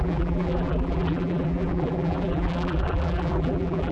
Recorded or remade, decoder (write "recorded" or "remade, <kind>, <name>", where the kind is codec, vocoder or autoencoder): remade, vocoder, BigVGAN v2